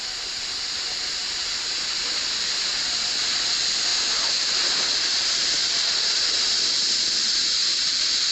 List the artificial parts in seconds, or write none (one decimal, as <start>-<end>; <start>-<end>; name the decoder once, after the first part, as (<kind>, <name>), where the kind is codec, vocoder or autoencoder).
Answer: 7.6-8.3 (vocoder, BigVGAN v2)